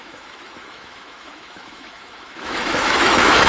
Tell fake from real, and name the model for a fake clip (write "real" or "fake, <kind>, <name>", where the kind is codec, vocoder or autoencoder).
fake, autoencoder, DAC-VAE